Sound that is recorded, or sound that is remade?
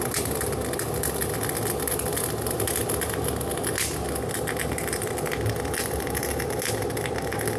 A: recorded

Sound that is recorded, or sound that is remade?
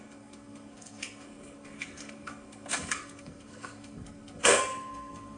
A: remade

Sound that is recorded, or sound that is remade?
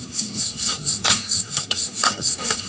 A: remade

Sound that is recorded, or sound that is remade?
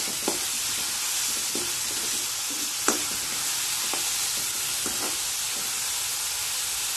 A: recorded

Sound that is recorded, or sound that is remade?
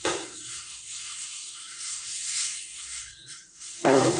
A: remade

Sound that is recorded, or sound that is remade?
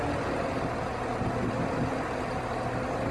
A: recorded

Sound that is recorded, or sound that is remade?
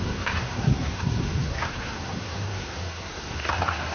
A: remade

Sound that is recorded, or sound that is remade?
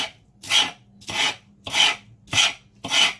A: recorded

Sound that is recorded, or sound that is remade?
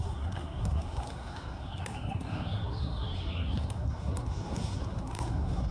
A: remade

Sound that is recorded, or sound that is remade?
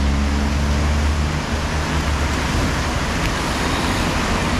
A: recorded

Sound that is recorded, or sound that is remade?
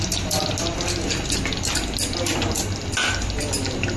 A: recorded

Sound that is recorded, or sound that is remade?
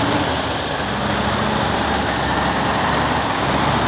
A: recorded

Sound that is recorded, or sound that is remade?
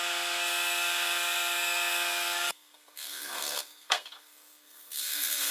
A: remade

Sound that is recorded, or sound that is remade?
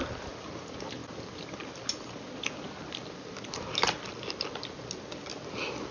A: recorded